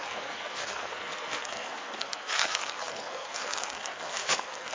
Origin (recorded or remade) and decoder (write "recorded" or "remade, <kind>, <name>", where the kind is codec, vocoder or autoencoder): remade, codec, SNAC